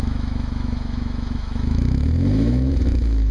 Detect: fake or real fake